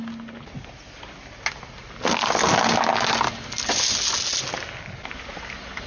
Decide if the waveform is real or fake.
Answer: real